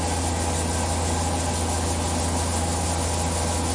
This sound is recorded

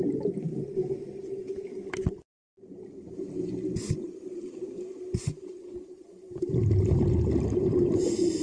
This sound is recorded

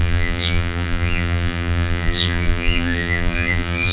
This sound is remade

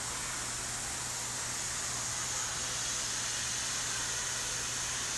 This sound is recorded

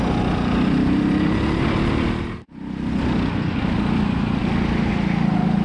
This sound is recorded